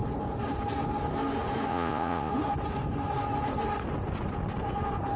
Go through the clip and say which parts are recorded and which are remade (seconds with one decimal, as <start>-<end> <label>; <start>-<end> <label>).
0.0-1.7 recorded; 1.7-2.3 remade; 2.3-5.2 recorded